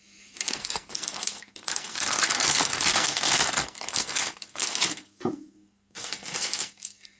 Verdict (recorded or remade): remade